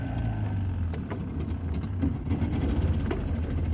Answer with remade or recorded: recorded